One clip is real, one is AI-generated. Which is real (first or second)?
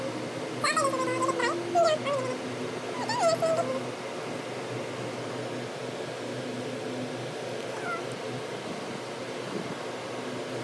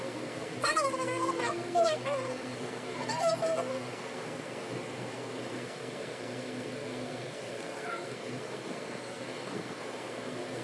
first